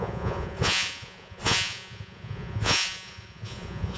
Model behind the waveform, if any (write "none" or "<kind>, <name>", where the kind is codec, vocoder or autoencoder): vocoder, Vocos